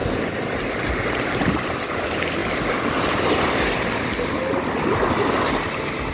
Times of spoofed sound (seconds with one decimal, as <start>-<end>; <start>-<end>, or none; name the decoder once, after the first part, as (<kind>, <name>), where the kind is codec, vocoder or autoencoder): none